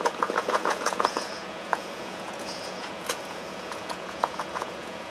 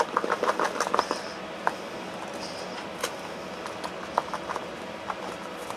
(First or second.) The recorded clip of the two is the second